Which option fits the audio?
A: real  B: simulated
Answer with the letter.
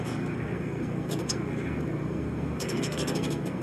B